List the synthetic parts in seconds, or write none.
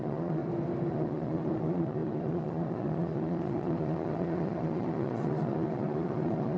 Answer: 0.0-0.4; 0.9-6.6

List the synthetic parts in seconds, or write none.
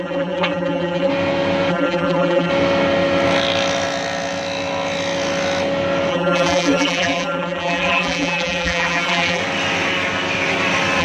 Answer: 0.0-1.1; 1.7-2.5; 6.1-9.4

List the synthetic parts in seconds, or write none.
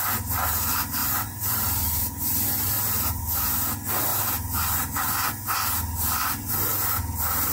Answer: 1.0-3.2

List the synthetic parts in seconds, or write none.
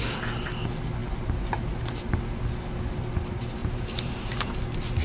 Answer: 1.0-1.9; 3.6-4.6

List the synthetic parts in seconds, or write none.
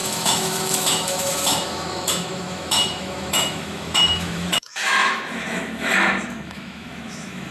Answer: 0.0-7.5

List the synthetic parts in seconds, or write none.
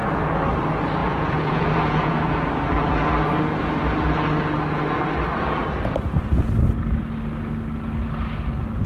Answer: 1.0-2.5